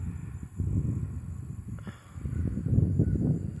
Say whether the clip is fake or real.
real